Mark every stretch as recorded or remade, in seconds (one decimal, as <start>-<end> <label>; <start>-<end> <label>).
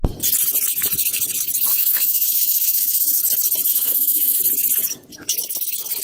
0.0-1.7 recorded; 1.7-3.2 remade; 3.2-3.7 recorded; 3.7-4.4 remade; 4.4-6.0 recorded